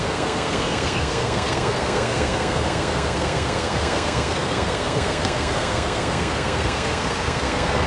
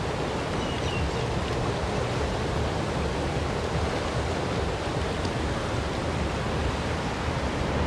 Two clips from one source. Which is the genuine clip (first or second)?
second